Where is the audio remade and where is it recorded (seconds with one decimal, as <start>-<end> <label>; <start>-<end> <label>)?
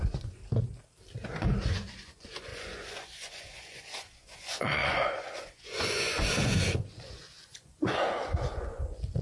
0.0-0.4 remade; 0.4-1.4 recorded; 1.4-9.2 remade